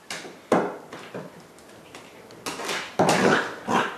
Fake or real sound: real